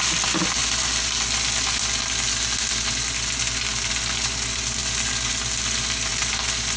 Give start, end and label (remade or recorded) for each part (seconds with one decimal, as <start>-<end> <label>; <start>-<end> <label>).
0.0-6.8 recorded